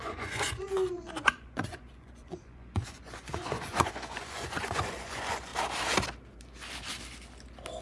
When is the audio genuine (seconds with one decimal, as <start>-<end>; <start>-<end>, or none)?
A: 5.5-7.8